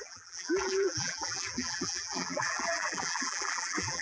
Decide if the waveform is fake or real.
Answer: fake